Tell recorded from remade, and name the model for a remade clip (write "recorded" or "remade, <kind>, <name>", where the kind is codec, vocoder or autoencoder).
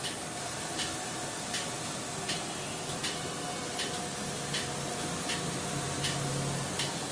recorded